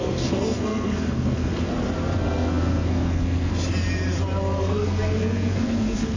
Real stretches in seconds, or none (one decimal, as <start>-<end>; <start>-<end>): 1.7-2.2; 3.5-4.6